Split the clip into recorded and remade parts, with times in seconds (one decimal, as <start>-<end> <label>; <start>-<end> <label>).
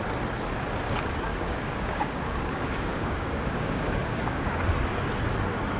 0.0-1.3 recorded; 1.3-4.6 remade; 4.6-5.8 recorded